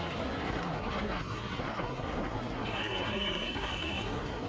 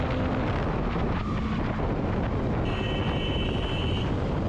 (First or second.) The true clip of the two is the second